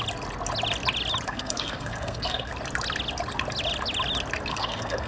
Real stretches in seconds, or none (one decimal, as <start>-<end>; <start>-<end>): 0.0-1.3; 2.5-4.5